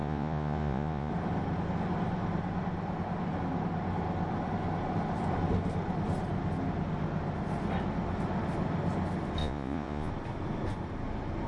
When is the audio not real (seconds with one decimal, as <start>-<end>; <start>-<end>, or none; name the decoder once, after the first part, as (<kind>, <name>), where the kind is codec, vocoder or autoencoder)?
0.0-1.1 (vocoder, Vocos); 9.4-10.1